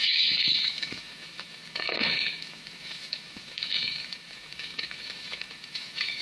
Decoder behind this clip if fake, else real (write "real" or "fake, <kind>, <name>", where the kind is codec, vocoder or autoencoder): fake, autoencoder, DAC-VAE